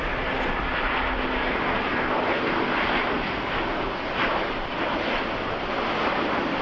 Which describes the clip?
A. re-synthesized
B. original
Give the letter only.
B